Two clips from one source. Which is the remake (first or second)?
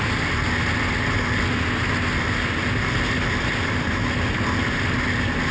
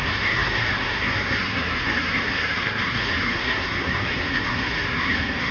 second